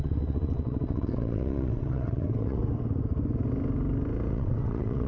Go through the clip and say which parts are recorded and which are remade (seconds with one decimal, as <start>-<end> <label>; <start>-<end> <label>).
0.0-2.6 remade; 2.6-4.3 recorded; 4.3-5.1 remade